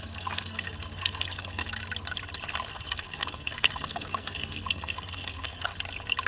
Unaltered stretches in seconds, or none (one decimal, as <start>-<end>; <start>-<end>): 1.8-2.7; 5.7-6.3